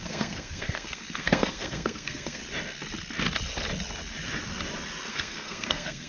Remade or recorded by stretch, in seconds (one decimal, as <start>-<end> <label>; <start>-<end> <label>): 0.0-2.4 remade; 2.4-5.1 recorded; 5.1-6.1 remade